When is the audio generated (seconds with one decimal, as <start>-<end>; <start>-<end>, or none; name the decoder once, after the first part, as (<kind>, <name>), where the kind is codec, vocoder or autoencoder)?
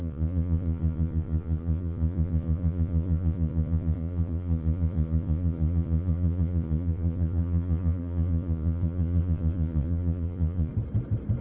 0.0-10.7 (vocoder, Vocos)